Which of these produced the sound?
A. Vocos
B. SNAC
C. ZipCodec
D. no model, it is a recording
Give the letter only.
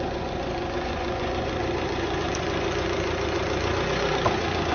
A